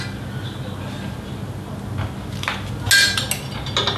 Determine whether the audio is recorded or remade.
recorded